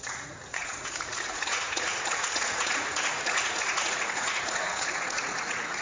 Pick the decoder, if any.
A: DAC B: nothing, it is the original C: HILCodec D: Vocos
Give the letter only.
D